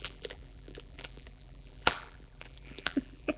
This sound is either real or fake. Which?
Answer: fake